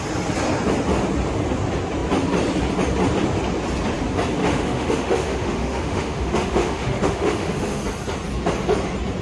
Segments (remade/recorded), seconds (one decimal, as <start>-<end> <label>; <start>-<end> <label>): 0.0-4.4 recorded; 4.4-7.8 remade; 7.8-9.2 recorded